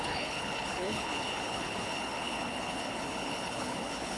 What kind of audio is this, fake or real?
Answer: fake